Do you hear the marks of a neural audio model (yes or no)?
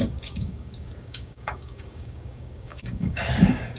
yes